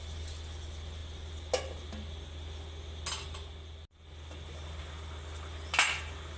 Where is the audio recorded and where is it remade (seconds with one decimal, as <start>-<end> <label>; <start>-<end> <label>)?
0.0-6.4 recorded

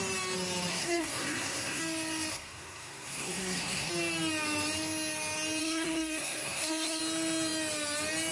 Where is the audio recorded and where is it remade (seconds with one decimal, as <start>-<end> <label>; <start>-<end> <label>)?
0.0-0.7 recorded; 0.7-1.8 remade; 1.8-2.3 recorded; 2.3-3.9 remade; 3.9-5.6 recorded; 5.6-7.0 remade; 7.0-8.3 recorded

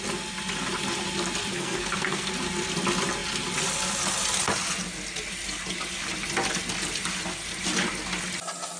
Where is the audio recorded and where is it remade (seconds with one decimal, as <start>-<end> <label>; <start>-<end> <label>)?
0.0-1.5 recorded; 1.5-2.3 remade; 2.3-8.8 recorded

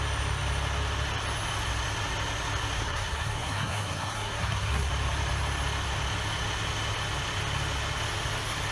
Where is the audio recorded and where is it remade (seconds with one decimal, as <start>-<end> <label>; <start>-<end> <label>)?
0.0-2.8 recorded; 2.8-4.9 remade; 4.9-8.7 recorded

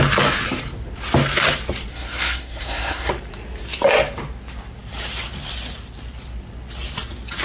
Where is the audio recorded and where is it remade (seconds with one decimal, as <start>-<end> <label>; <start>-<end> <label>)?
0.0-1.9 recorded; 1.9-3.1 remade; 3.1-7.4 recorded

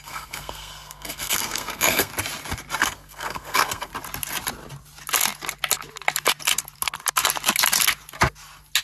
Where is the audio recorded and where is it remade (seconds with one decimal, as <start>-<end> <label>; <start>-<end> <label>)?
0.0-2.1 remade; 2.1-2.8 recorded; 2.8-3.9 remade; 3.9-8.8 recorded

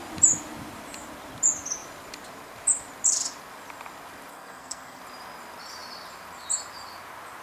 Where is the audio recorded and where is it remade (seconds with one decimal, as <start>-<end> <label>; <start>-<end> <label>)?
0.0-4.3 recorded; 4.3-5.0 remade; 5.0-7.4 recorded